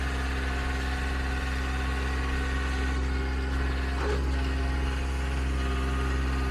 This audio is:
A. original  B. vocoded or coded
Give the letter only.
A